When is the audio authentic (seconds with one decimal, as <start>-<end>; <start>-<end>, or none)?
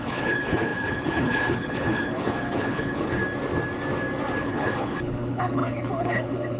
3.2-4.4